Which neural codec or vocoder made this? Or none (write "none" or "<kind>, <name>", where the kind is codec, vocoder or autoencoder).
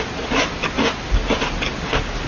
none